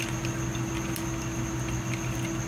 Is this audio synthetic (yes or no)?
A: no